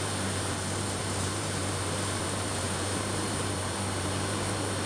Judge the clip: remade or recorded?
remade